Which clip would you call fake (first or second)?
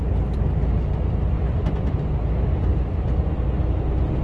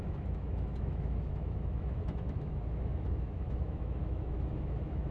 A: second